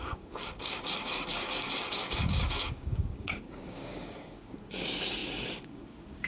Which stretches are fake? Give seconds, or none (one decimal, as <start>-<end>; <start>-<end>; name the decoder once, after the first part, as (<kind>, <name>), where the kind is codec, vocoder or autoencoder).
0.0-6.3 (codec, DAC)